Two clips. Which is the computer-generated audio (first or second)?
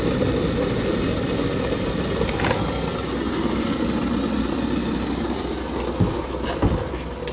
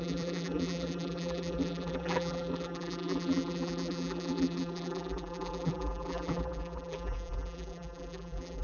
second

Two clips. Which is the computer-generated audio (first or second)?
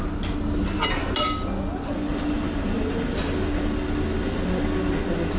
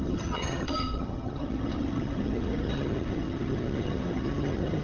second